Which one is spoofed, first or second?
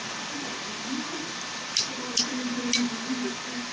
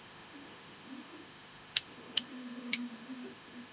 second